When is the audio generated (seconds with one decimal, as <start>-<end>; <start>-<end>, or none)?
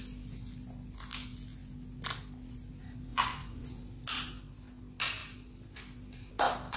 3.1-3.8